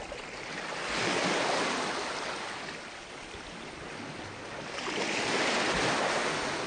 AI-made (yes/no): no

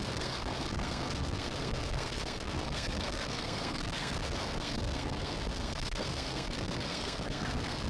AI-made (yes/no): yes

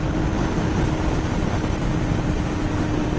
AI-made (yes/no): no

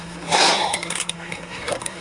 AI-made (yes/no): yes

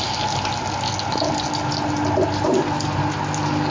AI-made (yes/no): no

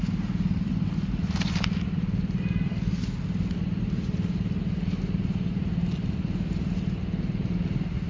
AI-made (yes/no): no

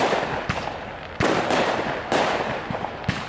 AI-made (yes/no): no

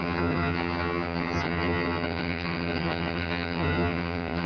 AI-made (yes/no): yes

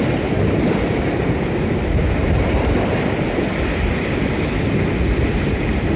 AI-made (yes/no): no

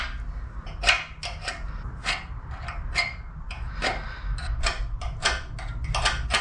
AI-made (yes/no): no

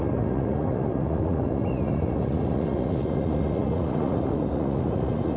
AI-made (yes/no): yes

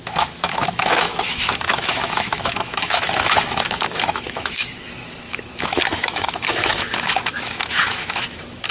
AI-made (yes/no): yes